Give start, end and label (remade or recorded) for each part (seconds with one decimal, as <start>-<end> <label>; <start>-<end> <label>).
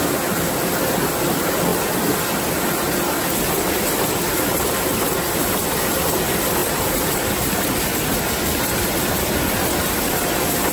0.0-10.7 recorded